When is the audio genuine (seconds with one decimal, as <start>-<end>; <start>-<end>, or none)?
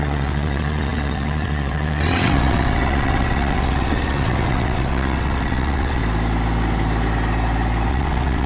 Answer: 6.0-7.9